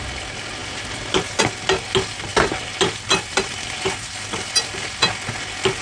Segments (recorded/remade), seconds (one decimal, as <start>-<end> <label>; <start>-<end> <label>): 0.0-0.6 recorded; 0.6-1.4 remade; 1.4-2.3 recorded; 2.3-3.9 remade; 3.9-5.8 recorded